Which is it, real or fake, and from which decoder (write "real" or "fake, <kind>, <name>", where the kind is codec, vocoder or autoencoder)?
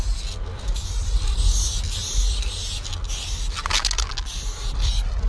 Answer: real